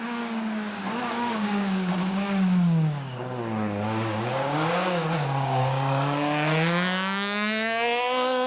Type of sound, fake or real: fake